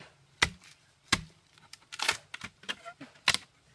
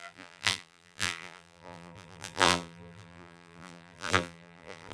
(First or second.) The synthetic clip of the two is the second